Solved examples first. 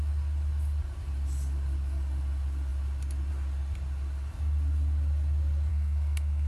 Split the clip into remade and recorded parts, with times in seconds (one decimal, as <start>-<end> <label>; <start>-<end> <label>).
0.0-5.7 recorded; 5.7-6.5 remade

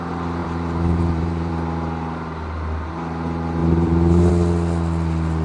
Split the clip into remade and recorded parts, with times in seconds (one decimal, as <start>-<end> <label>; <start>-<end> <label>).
0.0-0.4 recorded; 0.4-1.5 remade; 1.5-3.6 recorded; 3.6-4.3 remade; 4.3-5.4 recorded

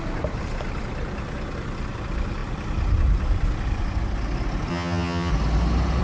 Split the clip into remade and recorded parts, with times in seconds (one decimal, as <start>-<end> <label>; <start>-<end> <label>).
0.0-4.7 recorded; 4.7-5.3 remade; 5.3-6.0 recorded

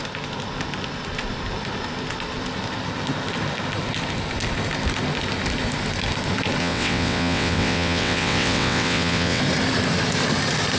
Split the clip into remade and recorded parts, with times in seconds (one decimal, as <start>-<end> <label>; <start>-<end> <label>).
0.0-6.6 recorded; 6.6-9.4 remade; 9.4-10.8 recorded

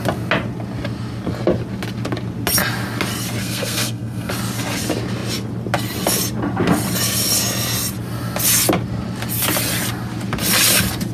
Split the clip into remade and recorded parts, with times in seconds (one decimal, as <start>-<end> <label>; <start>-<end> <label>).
0.0-3.4 recorded; 3.4-4.3 remade; 4.3-11.1 recorded